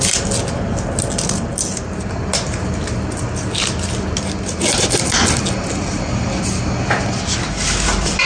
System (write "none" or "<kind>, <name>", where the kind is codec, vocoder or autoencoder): none